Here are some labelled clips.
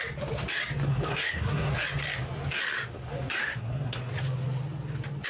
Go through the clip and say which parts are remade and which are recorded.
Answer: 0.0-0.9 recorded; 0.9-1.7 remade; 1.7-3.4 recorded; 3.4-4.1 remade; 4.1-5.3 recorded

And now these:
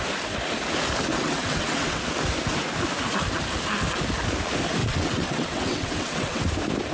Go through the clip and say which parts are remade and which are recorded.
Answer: 0.0-1.1 recorded; 1.1-2.0 remade; 2.0-4.8 recorded; 4.8-6.5 remade; 6.5-6.9 recorded

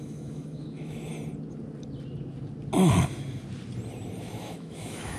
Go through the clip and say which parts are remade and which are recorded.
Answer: 0.0-1.1 remade; 1.1-4.2 recorded; 4.2-5.2 remade

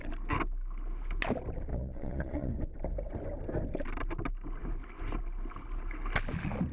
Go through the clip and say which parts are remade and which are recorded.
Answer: 0.0-1.7 recorded; 1.7-2.5 remade; 2.5-6.7 recorded

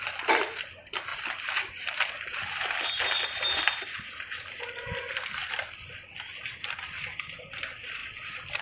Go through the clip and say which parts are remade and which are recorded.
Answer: 0.0-8.6 recorded

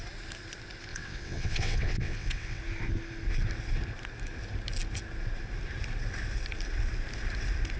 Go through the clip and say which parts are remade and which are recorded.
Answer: 0.0-0.9 recorded; 0.9-2.6 remade; 2.6-7.8 recorded